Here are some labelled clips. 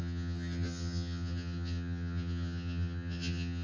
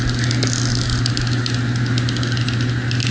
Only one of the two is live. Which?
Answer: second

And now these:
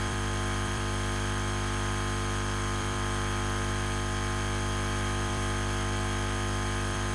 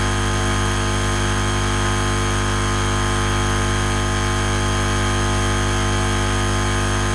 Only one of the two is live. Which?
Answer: second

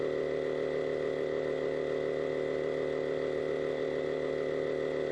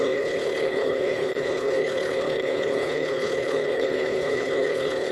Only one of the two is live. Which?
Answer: first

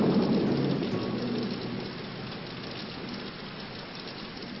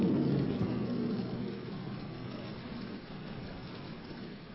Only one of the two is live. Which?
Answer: first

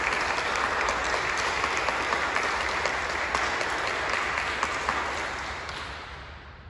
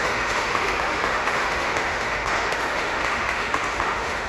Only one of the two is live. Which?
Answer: first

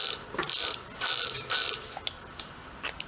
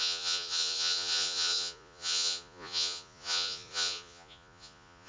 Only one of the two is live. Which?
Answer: first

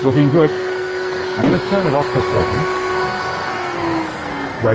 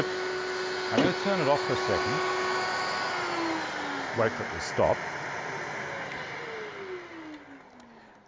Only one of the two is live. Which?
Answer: second